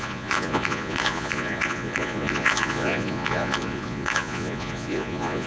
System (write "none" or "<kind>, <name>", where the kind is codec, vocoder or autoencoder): vocoder, Vocos